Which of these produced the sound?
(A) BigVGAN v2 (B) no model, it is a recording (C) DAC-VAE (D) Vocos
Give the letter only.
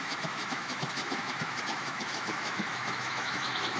C